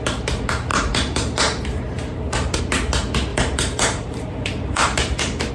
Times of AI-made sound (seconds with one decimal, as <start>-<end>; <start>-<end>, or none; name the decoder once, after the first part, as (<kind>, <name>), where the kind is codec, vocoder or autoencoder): 0.7-2.6 (vocoder, BigVGAN v2); 3.3-5.5